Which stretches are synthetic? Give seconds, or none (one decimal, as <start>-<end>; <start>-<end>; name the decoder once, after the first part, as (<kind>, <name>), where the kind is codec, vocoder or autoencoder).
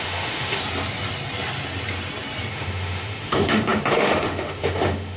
0.0-0.6 (autoencoder, DAC-VAE); 2.5-5.2